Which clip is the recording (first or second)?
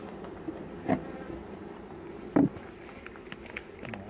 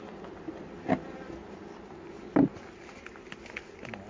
second